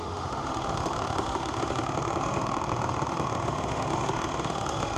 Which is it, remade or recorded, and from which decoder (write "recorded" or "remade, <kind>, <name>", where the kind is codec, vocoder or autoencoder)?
remade, autoencoder, DAC-VAE